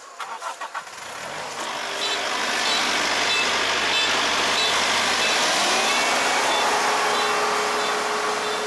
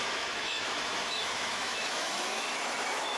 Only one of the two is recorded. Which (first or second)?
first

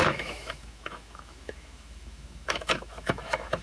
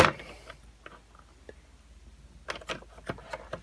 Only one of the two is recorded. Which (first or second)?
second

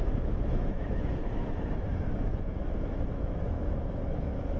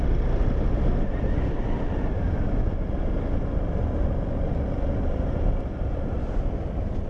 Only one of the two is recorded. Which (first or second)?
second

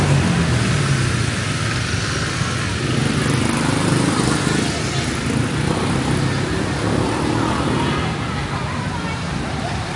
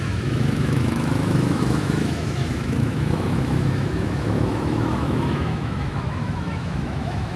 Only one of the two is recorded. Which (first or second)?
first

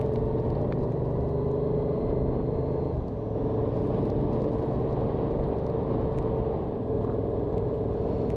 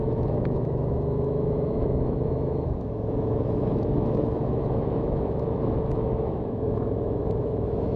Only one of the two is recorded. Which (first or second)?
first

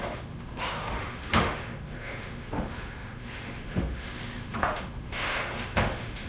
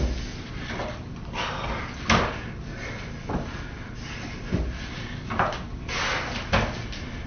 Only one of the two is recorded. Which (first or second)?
second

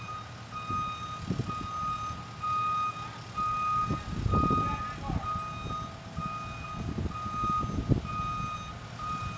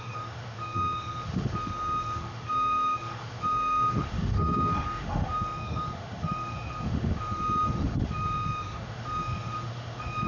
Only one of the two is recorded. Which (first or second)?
first